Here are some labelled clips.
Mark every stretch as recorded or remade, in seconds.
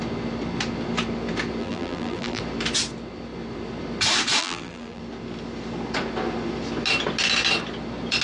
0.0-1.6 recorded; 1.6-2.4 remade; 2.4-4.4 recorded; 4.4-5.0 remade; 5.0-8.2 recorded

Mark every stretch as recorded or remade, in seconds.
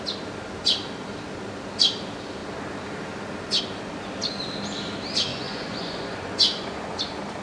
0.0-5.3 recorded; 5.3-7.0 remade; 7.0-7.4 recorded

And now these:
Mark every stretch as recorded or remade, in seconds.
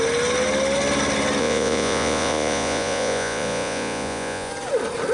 0.0-1.4 recorded; 1.4-4.5 remade; 4.5-5.1 recorded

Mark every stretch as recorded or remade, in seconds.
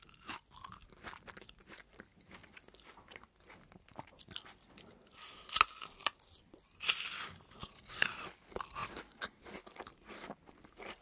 0.0-11.0 recorded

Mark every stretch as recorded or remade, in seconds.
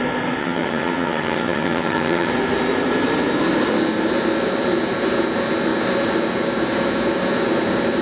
0.0-0.4 recorded; 0.4-2.3 remade; 2.3-8.0 recorded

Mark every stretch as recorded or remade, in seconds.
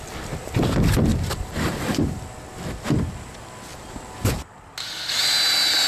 0.0-1.1 recorded; 1.1-2.0 remade; 2.0-3.7 recorded; 3.7-4.6 remade; 4.6-5.9 recorded